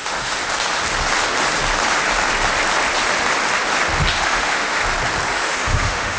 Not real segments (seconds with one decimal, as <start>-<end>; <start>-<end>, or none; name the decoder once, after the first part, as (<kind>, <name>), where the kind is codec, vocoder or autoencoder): 0.0-0.4 (autoencoder, DAC-VAE); 4.1-4.8; 5.3-6.2